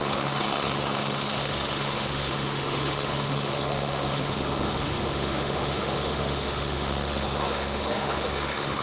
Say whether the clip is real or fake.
fake